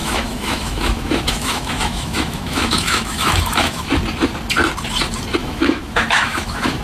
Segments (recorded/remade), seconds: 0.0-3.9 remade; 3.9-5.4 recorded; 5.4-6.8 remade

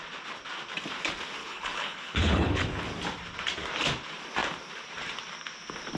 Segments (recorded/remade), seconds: 0.0-1.4 recorded; 1.4-2.6 remade; 2.6-6.0 recorded

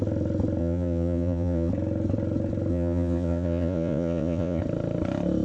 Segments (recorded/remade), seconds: 0.0-0.6 recorded; 0.6-1.7 remade; 1.7-2.7 recorded; 2.7-4.6 remade; 4.6-5.4 recorded

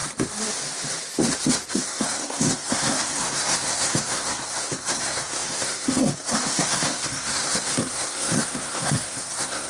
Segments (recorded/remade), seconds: 0.0-1.7 recorded; 1.7-9.7 remade

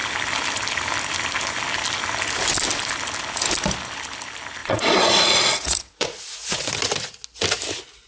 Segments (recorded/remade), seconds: 0.0-4.6 recorded; 4.6-6.7 remade; 6.7-8.1 recorded

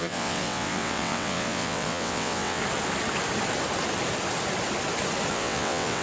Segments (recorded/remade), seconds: 0.0-2.6 remade; 2.6-5.3 recorded; 5.3-6.0 remade

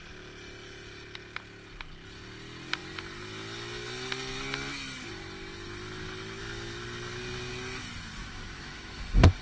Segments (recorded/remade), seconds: 0.0-8.2 recorded; 8.2-9.0 remade; 9.0-9.4 recorded